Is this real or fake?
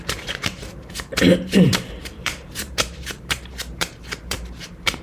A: fake